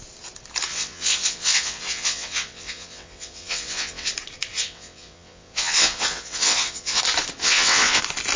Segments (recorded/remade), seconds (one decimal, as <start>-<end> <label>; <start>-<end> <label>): 0.0-0.7 recorded; 0.7-4.1 remade; 4.1-4.5 recorded; 4.5-7.0 remade; 7.0-7.4 recorded; 7.4-8.0 remade; 8.0-8.4 recorded